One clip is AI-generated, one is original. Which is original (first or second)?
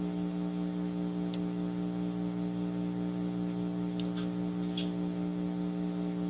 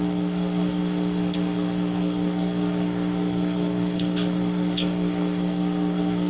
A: first